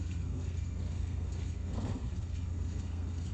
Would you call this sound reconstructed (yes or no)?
yes